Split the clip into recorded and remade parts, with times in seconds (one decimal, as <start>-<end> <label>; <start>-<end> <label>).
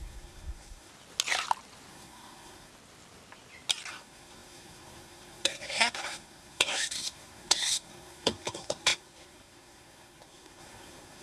0.0-0.9 remade; 0.9-1.9 recorded; 1.9-2.7 remade; 2.7-3.9 recorded; 3.9-11.2 remade